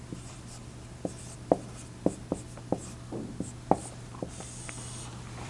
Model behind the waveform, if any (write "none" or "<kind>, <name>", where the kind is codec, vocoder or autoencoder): vocoder, BigVGAN v2